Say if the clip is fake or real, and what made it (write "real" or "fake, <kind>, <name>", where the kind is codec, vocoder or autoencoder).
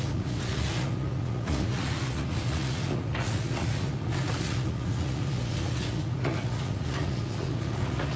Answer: fake, vocoder, Vocos